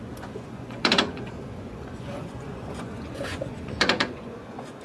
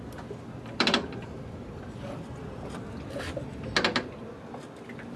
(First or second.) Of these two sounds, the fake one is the first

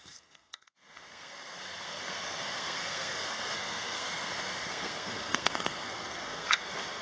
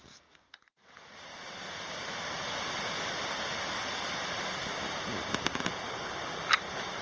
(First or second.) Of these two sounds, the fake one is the first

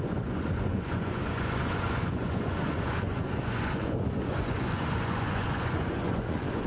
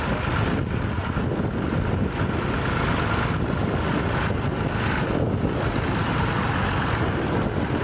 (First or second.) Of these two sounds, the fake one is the first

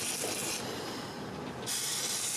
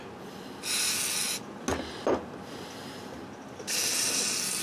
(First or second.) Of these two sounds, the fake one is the first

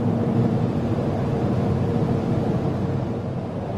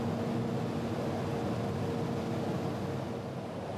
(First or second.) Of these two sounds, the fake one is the first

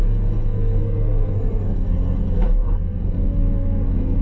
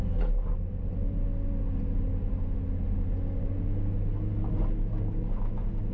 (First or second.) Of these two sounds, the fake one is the first